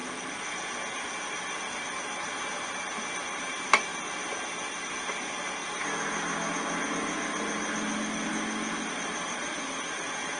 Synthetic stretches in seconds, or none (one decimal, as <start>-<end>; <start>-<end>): none